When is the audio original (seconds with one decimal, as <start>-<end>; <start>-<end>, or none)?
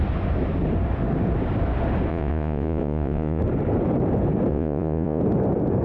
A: 0.0-2.1; 3.4-4.5; 5.2-5.8